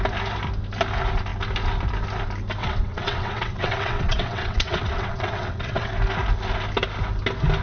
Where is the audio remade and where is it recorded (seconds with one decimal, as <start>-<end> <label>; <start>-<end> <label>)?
0.0-2.6 recorded; 2.6-5.9 remade; 5.9-7.6 recorded